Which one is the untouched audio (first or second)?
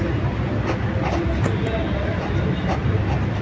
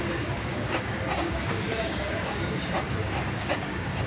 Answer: first